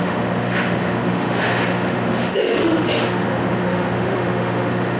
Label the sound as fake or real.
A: fake